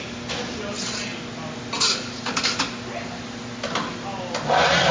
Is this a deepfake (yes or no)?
no